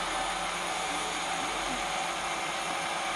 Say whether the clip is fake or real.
real